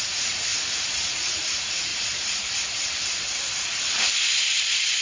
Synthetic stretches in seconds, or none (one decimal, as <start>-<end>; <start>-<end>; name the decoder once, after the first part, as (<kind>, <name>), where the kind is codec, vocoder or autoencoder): 0.0-1.9 (vocoder, Vocos)